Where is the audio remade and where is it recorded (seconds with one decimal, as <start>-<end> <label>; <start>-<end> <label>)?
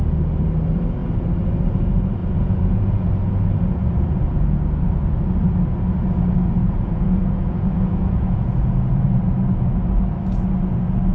0.0-2.2 recorded; 2.2-3.1 remade; 3.1-6.6 recorded; 6.6-9.2 remade; 9.2-11.1 recorded